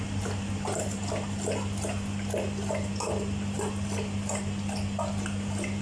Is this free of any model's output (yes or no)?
yes